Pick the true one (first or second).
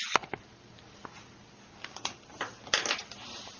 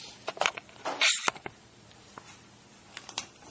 first